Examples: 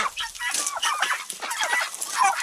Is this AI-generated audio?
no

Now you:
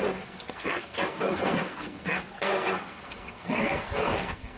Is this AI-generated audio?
yes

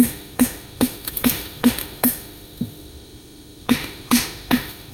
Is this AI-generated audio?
yes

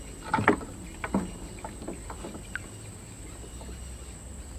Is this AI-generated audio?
no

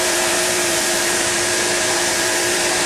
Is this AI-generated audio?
yes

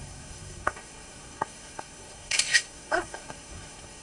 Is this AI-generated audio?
yes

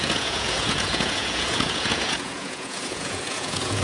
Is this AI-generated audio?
yes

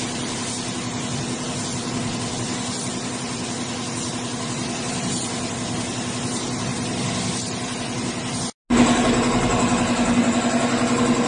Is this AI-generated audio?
no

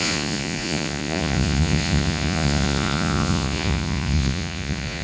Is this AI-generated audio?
yes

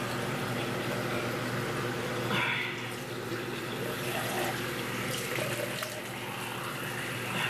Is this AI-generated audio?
no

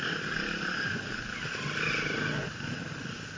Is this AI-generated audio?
no